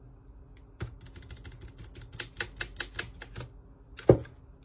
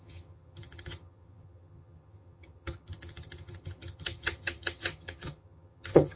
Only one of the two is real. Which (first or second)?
first